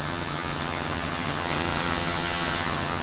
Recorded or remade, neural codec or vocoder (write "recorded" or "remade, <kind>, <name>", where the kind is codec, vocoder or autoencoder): remade, vocoder, HiFi-GAN